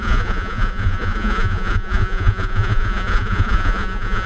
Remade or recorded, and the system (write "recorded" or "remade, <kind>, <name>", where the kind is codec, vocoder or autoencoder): remade, vocoder, Vocos